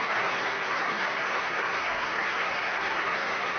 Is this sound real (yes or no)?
no